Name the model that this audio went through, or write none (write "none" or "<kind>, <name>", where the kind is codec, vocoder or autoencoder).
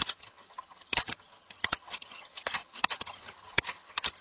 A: vocoder, HiFi-GAN